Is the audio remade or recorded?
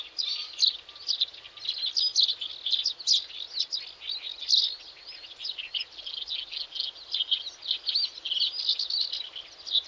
recorded